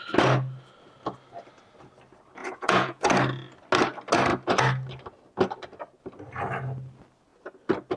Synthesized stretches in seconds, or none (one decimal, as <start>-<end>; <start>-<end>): 2.4-3.1